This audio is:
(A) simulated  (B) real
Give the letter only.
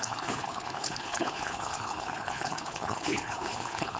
A